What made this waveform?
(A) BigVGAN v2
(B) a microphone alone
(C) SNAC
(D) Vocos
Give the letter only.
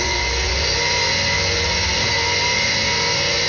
D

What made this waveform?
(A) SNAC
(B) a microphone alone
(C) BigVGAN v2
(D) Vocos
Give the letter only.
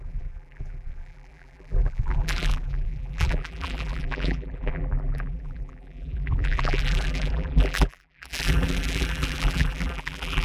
C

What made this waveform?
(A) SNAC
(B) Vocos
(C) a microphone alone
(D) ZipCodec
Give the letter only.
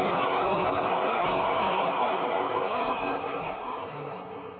A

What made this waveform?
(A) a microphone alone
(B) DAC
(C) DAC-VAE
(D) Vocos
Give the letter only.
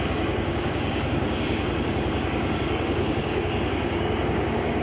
B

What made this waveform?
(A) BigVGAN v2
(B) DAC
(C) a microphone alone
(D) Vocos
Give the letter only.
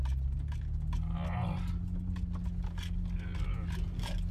C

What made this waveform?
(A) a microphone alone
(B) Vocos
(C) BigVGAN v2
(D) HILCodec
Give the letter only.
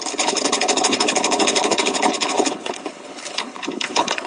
D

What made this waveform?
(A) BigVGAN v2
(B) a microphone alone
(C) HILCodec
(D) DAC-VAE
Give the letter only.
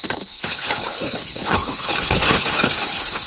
C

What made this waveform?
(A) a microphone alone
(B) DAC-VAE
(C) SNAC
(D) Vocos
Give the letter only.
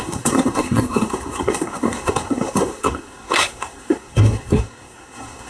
C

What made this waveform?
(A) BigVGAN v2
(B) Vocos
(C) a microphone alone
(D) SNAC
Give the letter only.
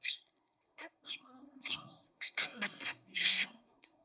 D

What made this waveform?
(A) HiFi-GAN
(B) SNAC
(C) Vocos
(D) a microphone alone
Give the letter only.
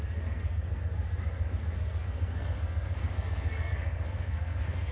B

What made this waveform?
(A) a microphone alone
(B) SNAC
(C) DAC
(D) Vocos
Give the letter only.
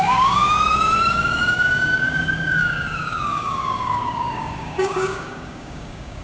C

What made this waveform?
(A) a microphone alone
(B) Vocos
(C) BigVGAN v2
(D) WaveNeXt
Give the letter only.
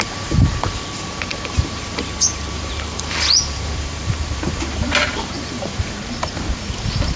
C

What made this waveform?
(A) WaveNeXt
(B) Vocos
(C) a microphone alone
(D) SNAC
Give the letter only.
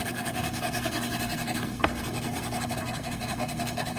D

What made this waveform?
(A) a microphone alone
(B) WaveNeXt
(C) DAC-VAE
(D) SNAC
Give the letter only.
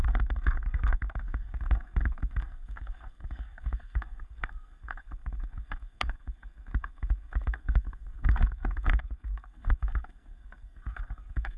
D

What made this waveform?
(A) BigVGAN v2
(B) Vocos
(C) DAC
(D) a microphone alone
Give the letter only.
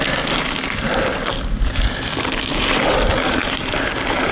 D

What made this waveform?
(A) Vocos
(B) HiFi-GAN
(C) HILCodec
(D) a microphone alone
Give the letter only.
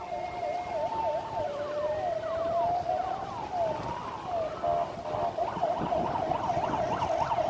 D